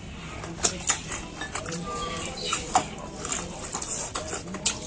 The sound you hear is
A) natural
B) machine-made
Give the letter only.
A